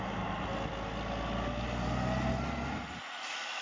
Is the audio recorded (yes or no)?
yes